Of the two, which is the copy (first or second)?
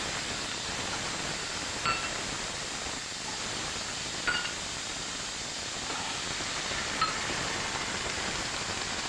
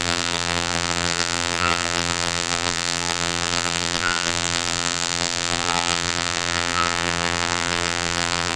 second